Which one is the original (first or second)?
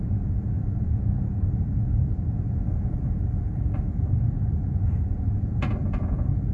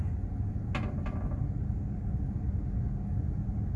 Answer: second